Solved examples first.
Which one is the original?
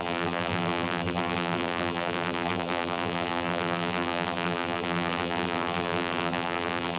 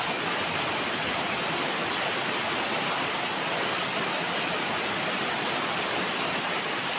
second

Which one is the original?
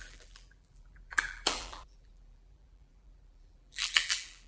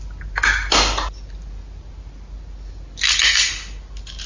second